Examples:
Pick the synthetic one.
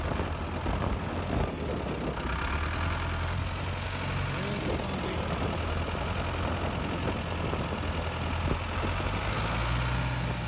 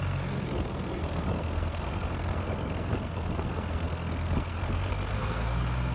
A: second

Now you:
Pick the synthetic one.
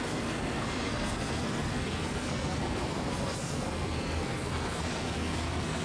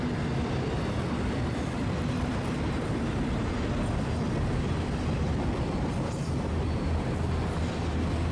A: first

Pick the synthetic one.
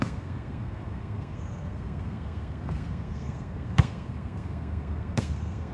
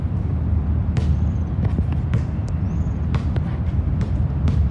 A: first